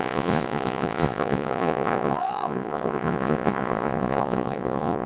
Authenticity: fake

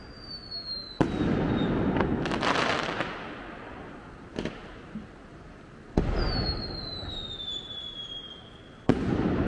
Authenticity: real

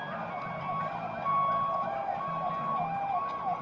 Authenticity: real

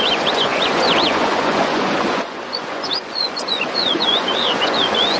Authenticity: fake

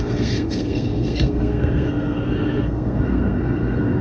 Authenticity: fake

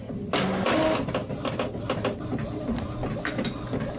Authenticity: real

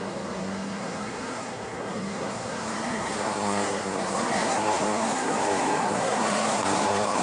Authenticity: fake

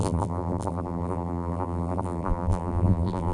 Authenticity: fake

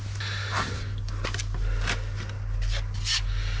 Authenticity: real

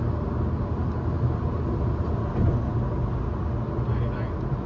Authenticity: real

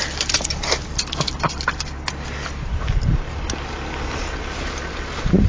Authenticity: real